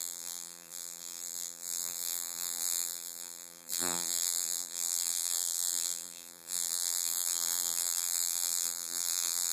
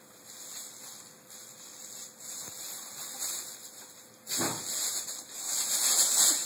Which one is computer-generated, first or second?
first